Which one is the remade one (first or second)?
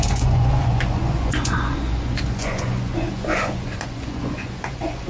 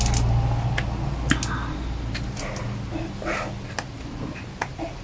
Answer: first